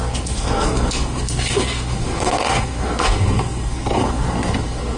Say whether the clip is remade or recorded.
remade